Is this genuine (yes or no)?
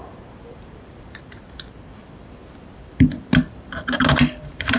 no